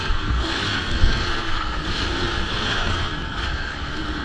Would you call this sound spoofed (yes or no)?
yes